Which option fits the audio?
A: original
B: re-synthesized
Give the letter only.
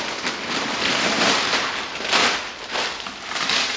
A